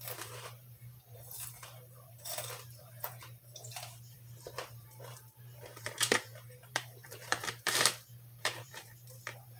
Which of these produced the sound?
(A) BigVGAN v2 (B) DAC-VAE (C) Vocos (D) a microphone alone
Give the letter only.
A